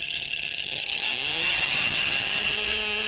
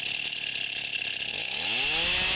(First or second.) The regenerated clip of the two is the first